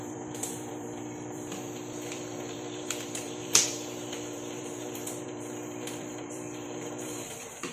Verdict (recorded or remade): remade